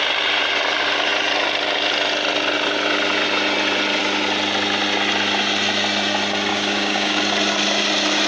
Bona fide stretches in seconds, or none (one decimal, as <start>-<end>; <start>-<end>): 0.0-6.5; 7.2-8.3